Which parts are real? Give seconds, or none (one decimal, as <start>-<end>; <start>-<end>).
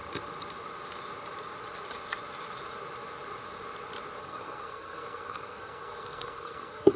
0.0-4.2